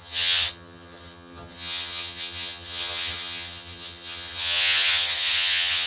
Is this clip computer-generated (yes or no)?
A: yes